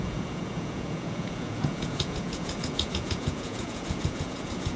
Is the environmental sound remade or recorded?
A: remade